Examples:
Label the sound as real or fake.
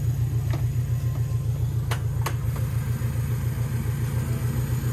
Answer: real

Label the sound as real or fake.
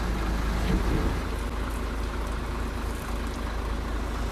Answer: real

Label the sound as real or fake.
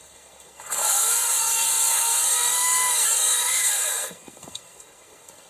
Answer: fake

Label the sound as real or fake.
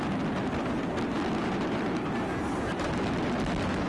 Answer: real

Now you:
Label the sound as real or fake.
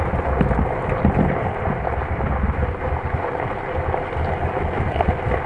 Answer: real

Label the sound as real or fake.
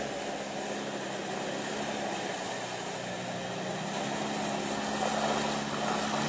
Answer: real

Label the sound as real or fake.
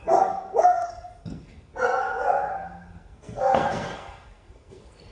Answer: fake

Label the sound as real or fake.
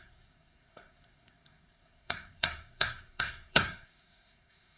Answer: fake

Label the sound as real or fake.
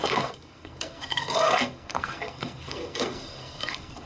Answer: fake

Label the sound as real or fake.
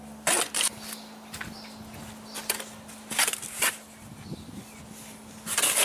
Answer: real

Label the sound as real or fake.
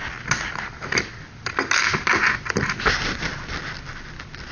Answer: real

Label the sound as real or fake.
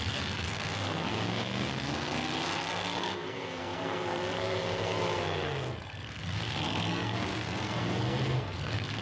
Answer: fake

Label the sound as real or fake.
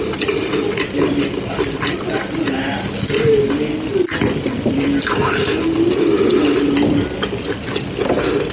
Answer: real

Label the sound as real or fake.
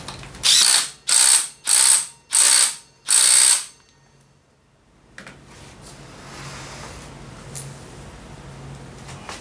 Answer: real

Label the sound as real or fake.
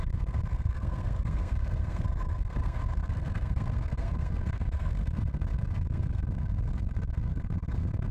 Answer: fake